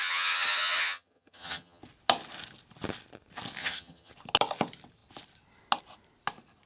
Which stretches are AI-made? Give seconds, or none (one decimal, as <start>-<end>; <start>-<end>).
0.0-1.8; 3.6-4.1